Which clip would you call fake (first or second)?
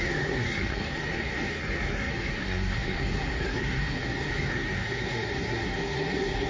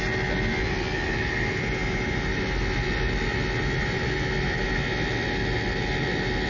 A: first